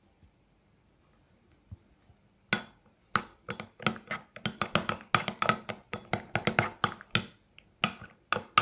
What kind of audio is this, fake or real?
real